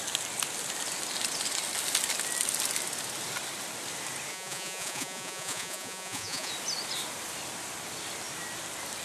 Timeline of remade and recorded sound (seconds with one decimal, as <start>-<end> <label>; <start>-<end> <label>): 0.0-4.3 recorded; 4.3-6.5 remade; 6.5-9.0 recorded